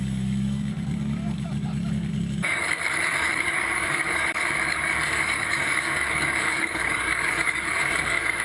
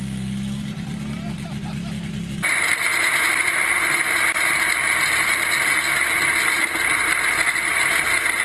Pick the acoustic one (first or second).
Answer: second